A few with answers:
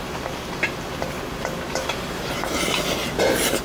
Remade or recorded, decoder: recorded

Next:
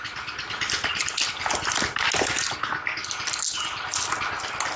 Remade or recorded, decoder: recorded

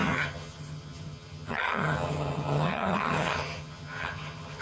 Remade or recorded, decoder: remade, vocoder, HiFi-GAN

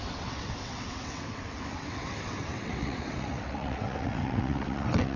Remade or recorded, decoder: remade, vocoder, WaveNeXt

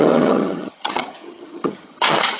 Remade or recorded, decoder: remade, vocoder, HiFi-GAN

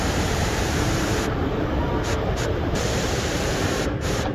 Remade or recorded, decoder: remade, vocoder, BigVGAN v2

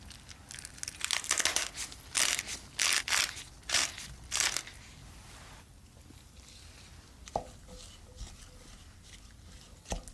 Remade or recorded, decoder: recorded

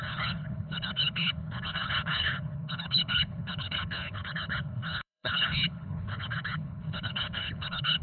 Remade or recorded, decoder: remade, codec, HILCodec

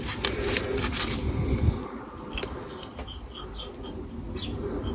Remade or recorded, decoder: recorded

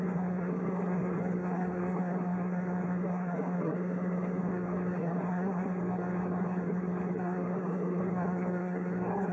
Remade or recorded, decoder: remade, codec, SNAC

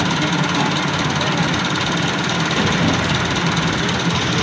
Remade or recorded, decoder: recorded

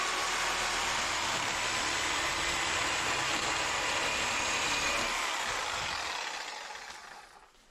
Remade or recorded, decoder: recorded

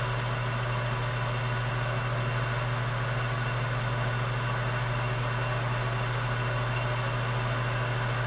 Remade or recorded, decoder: recorded